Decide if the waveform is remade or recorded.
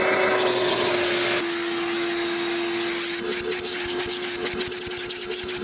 recorded